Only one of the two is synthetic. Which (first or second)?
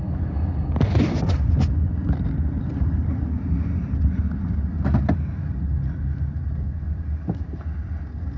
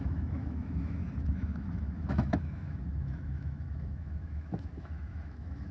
second